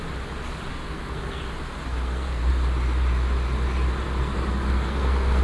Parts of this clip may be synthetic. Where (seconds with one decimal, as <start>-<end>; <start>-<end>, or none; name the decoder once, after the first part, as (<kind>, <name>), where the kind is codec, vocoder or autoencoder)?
0.7-1.4 (codec, SNAC); 1.9-2.5; 4.2-5.4